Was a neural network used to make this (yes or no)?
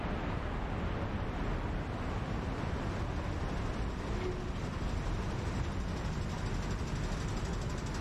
no